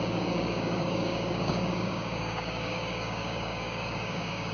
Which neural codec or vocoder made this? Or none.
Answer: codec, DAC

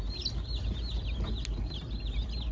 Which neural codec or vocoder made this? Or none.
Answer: none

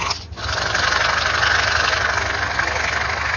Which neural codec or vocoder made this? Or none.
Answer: none